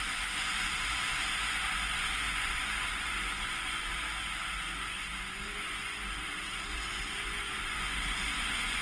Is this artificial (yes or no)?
yes